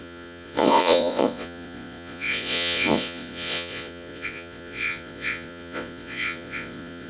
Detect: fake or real fake